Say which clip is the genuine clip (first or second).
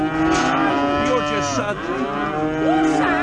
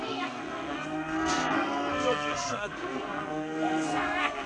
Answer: first